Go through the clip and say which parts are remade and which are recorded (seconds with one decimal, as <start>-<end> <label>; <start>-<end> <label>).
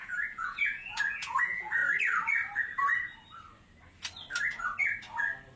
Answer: 0.0-1.8 remade; 1.8-5.6 recorded